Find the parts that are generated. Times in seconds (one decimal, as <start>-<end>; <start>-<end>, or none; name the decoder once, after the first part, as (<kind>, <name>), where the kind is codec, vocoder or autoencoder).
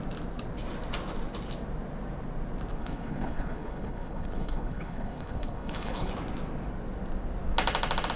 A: 2.8-6.1 (codec, HILCodec)